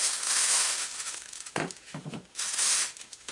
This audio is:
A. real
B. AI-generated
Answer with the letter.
B